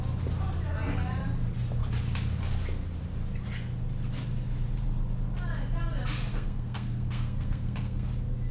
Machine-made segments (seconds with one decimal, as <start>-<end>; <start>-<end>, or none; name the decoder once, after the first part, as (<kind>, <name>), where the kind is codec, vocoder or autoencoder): 6.3-8.1 (codec, SNAC)